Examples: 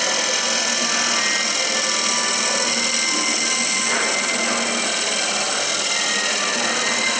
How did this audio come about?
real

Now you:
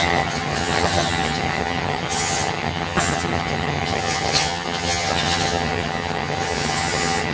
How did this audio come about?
fake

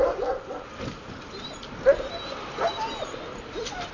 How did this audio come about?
real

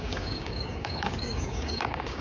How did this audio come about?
fake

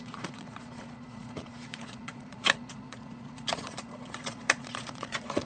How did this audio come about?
fake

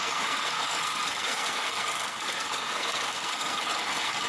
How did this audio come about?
fake